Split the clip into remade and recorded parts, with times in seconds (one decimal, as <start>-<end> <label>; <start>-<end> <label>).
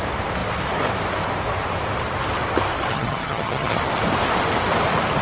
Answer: 0.0-2.9 recorded; 2.9-3.8 remade; 3.8-5.2 recorded